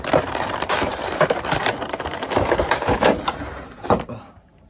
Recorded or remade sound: remade